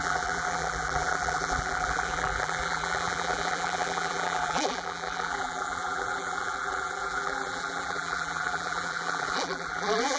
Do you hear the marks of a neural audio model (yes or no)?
yes